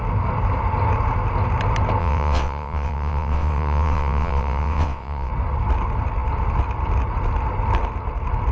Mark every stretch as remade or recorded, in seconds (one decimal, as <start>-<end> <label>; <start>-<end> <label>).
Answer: 0.0-2.0 recorded; 2.0-5.3 remade; 5.3-8.5 recorded